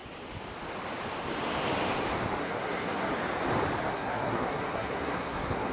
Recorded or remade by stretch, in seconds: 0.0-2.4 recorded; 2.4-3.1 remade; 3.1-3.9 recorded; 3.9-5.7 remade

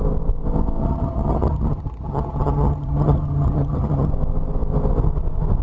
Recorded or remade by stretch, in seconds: 0.0-0.8 recorded; 0.8-4.1 remade; 4.1-5.6 recorded